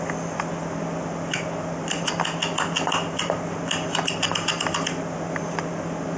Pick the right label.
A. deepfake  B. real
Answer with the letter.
B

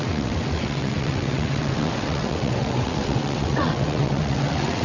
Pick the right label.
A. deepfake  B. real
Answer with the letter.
A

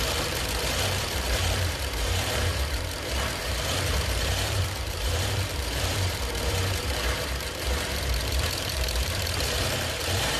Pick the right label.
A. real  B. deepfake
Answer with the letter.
B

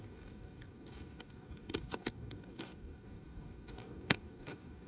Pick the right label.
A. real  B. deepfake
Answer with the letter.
B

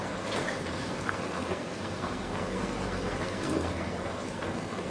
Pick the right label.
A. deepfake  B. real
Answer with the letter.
A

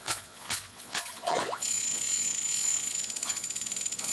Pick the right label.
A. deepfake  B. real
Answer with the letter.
A